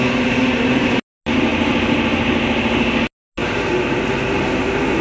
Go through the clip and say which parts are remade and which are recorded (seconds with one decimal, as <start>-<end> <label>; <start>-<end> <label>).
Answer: 0.0-5.0 recorded